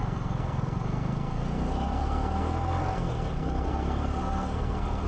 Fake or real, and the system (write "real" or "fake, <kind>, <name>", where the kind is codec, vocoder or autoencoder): fake, codec, SNAC